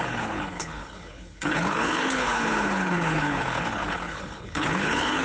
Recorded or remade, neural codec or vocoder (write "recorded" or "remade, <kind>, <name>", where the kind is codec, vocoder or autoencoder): remade, codec, HILCodec